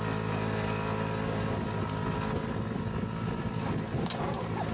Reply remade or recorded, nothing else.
recorded